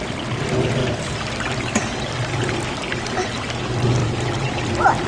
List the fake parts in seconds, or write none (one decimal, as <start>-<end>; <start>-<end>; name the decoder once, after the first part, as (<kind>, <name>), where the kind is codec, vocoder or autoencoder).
0.8-3.6 (vocoder, BigVGAN v2); 4.0-4.6